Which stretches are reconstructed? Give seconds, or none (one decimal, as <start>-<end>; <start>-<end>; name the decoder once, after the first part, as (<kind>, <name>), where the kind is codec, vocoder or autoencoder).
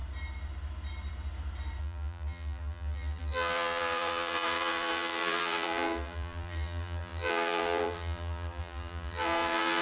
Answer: 1.8-9.8 (vocoder, BigVGAN v2)